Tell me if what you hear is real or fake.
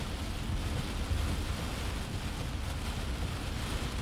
real